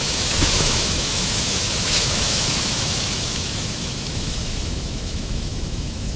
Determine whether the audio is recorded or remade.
remade